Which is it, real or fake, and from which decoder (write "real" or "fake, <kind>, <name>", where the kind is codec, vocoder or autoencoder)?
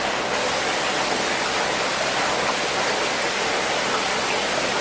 real